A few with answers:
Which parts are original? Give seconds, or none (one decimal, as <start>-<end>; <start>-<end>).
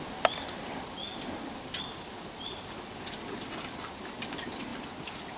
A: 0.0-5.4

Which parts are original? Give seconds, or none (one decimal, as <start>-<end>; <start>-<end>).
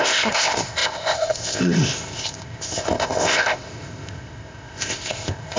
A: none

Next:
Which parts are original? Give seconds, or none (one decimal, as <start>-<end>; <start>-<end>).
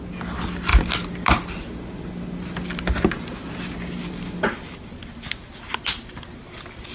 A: 0.0-6.9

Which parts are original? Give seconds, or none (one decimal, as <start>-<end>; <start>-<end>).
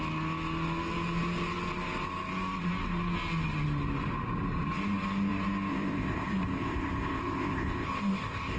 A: 0.0-5.7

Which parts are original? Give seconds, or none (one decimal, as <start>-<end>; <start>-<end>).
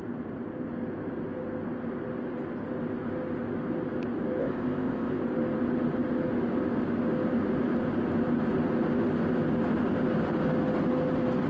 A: 0.0-4.4; 5.2-11.5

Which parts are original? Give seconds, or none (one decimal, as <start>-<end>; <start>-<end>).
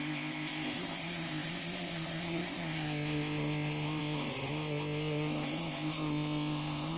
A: none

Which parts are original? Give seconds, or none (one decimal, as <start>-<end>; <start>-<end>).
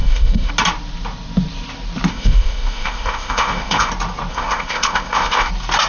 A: 0.5-2.1; 3.9-4.3; 5.5-5.9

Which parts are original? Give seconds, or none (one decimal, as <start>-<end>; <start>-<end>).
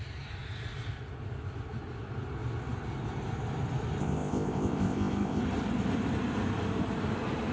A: 0.0-4.0; 5.4-7.5